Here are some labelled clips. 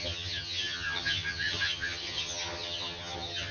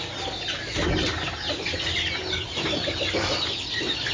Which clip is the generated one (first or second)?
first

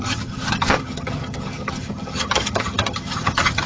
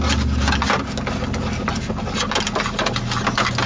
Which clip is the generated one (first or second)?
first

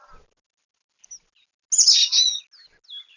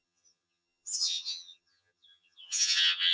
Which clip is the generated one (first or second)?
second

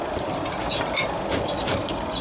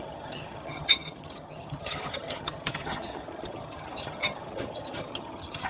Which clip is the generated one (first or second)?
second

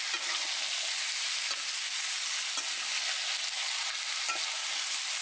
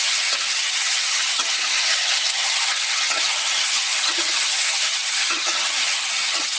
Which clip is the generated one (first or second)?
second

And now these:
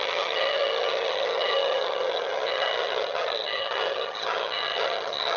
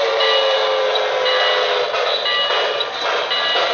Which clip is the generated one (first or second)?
first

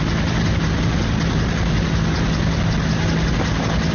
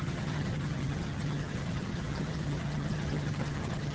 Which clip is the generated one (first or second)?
second